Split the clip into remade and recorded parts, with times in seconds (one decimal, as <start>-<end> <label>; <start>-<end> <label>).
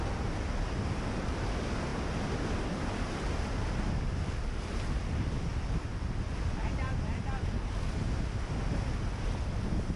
0.0-10.0 recorded